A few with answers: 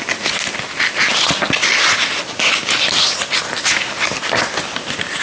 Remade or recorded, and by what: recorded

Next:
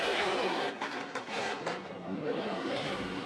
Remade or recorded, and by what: remade, codec, SNAC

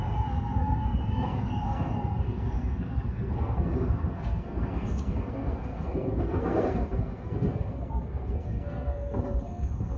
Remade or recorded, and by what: remade, codec, SNAC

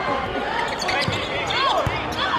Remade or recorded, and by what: recorded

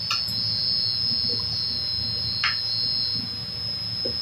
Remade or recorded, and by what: recorded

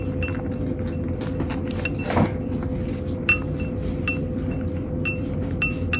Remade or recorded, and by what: recorded